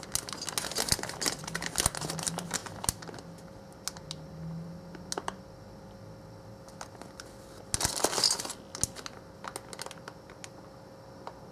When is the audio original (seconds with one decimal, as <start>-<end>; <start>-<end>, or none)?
0.0-11.5

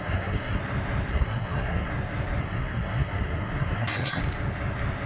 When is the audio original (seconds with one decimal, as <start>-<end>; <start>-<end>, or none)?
0.6-1.1; 1.9-2.4; 4.2-5.1

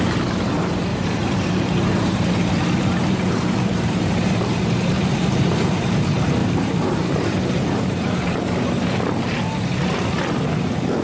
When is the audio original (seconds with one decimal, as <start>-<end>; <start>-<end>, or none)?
0.0-0.9; 5.8-6.4; 8.4-11.0

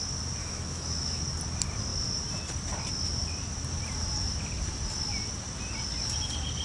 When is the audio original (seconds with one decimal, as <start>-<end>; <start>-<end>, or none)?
0.0-0.4; 1.2-6.6

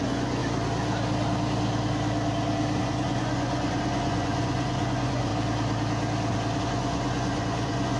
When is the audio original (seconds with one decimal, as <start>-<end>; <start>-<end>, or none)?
0.4-2.8; 5.3-6.6

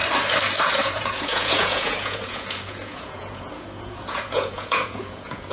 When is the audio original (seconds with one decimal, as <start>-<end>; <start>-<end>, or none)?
0.0-0.6

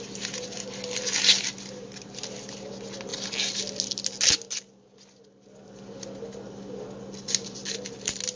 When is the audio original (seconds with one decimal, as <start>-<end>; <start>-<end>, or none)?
0.0-8.4